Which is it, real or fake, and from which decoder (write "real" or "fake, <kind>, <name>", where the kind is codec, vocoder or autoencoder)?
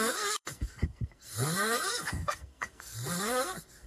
fake, codec, SNAC